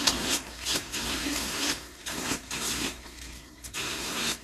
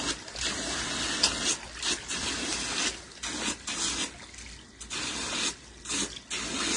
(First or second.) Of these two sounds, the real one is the second